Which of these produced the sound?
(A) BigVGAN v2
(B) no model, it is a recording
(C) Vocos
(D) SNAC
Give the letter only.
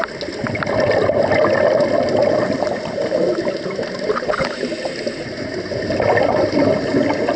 B